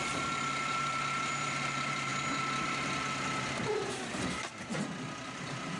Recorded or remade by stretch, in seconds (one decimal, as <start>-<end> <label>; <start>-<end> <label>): 0.0-2.1 remade; 2.1-3.6 recorded; 3.6-4.7 remade; 4.7-5.8 recorded